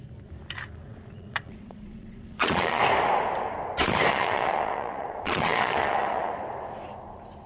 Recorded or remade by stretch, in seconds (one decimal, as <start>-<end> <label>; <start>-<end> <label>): 0.0-0.9 recorded; 0.9-2.8 remade; 2.8-4.1 recorded; 4.1-6.3 remade; 6.3-7.5 recorded